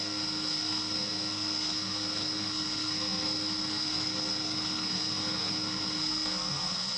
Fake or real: fake